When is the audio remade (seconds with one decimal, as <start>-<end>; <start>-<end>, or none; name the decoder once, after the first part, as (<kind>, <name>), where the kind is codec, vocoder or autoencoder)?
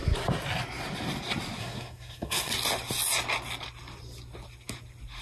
1.6-2.5 (codec, SNAC)